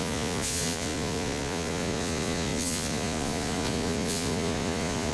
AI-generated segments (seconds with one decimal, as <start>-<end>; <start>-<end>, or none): 0.0-5.1